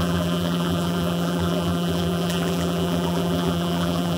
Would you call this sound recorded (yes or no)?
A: no